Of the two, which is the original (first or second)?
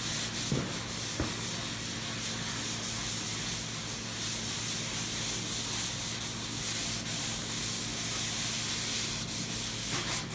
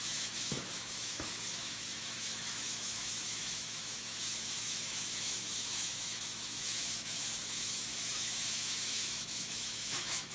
first